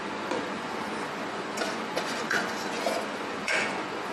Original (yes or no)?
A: no